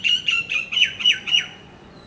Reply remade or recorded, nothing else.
remade